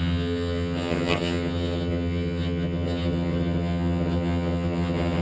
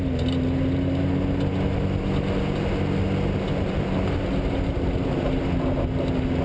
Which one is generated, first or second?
first